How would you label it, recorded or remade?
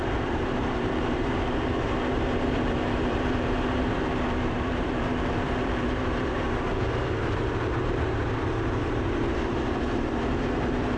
remade